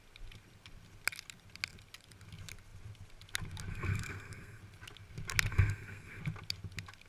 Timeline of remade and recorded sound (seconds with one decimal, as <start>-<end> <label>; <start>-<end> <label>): 0.0-3.7 recorded; 3.7-4.6 remade; 4.6-5.5 recorded; 5.5-6.2 remade; 6.2-7.1 recorded